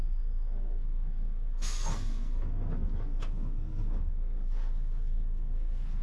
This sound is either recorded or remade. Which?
remade